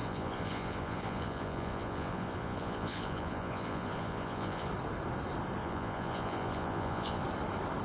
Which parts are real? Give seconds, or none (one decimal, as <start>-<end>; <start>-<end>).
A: 4.7-5.6; 7.2-7.8